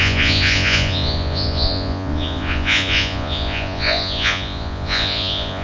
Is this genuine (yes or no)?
no